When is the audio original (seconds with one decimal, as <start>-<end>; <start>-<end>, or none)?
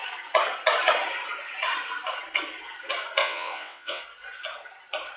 0.0-3.2; 4.0-5.2